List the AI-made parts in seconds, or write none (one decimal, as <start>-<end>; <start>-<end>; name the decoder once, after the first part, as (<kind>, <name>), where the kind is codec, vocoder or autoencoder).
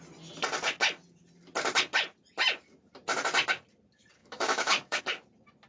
4.2-5.0 (autoencoder, DAC-VAE)